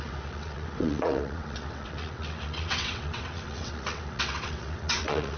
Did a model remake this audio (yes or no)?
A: yes